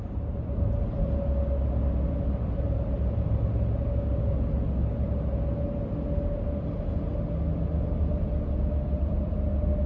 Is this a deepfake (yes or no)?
no